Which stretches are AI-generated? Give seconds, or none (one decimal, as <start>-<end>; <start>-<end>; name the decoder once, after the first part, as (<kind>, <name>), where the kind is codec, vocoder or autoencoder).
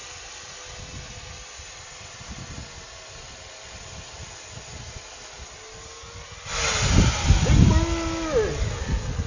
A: none